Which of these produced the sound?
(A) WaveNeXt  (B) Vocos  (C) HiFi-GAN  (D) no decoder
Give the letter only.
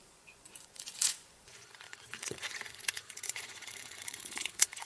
B